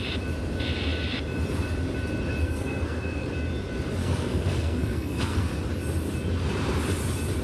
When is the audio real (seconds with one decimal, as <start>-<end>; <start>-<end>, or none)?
0.0-2.4; 3.3-4.0; 5.7-7.4